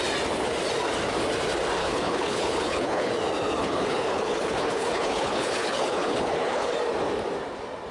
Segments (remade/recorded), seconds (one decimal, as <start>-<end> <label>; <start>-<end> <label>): 0.0-1.8 recorded; 1.8-3.1 remade; 3.1-3.6 recorded; 3.6-6.7 remade; 6.7-7.9 recorded